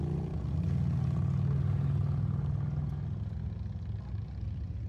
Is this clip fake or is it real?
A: real